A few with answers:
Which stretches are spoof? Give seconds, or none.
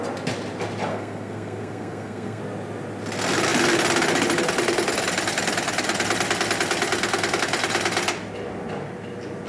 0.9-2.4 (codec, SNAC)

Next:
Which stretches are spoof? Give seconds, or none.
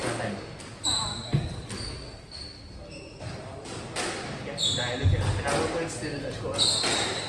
none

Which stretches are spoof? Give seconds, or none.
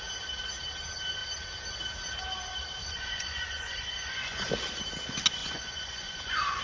2.8-4.5 (vocoder, Vocos); 5.4-6.6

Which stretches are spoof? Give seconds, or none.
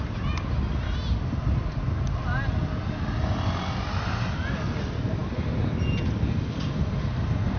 none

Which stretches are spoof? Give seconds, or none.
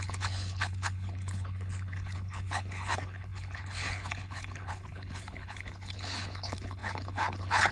0.0-7.7 (codec, HILCodec)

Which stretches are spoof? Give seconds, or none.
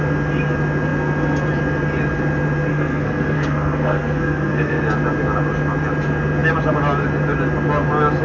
2.7-4.8 (codec, SNAC)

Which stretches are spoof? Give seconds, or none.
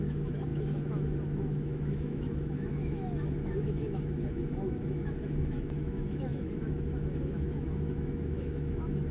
0.0-9.1 (autoencoder, DAC-VAE)